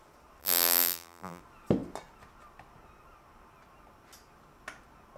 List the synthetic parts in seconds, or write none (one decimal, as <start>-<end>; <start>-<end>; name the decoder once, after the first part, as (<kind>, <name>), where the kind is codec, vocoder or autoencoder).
0.4-1.4 (vocoder, BigVGAN v2)